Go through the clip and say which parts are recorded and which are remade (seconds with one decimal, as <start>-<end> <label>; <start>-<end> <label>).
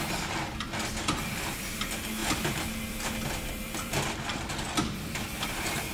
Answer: 0.0-2.2 recorded; 2.2-5.9 remade